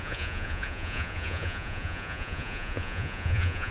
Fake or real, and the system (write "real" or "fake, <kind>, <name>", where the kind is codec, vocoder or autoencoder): fake, vocoder, Vocos